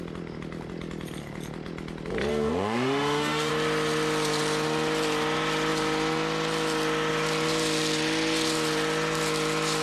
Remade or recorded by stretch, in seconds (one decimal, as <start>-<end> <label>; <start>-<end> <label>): 0.0-2.3 recorded; 2.3-3.5 remade; 3.5-9.8 recorded